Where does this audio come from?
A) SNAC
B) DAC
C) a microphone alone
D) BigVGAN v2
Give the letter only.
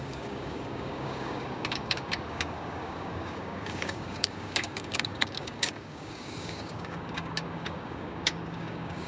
B